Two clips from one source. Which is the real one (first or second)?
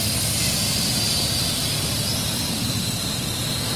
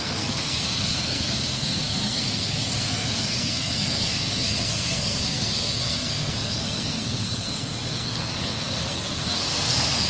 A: first